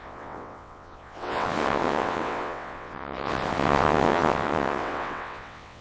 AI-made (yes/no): yes